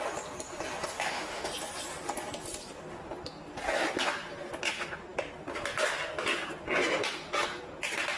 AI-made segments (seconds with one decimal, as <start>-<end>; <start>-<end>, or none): 0.9-1.5